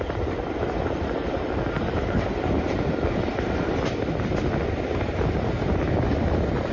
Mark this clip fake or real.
real